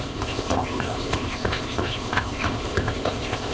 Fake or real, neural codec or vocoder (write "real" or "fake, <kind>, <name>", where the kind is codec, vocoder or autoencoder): fake, codec, ZipCodec